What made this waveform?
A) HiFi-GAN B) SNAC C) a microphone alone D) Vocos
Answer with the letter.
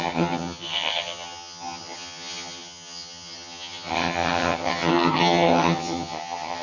A